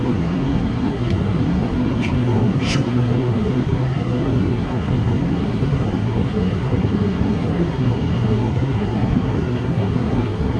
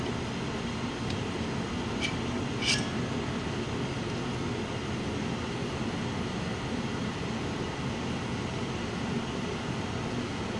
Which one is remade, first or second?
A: first